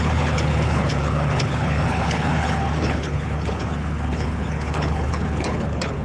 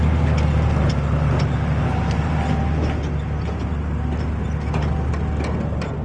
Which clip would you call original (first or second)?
second